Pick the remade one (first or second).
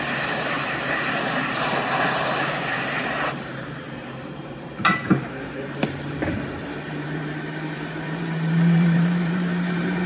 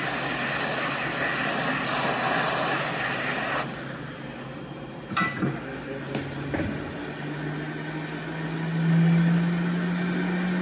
first